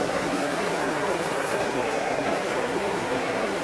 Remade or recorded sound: remade